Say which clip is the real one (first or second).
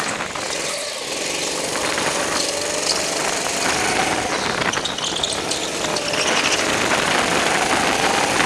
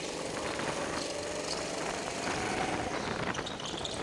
first